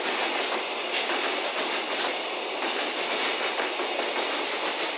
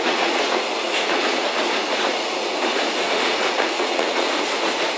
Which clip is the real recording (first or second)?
first